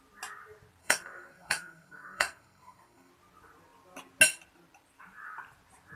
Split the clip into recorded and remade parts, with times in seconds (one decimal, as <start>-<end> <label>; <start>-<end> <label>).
0.0-0.8 recorded; 0.8-3.1 remade; 3.1-6.0 recorded